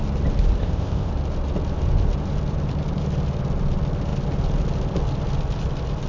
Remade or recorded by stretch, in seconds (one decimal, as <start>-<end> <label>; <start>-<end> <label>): 0.0-0.6 recorded; 0.6-1.1 remade; 1.1-6.1 recorded